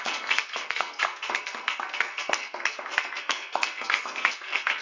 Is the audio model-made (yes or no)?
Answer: yes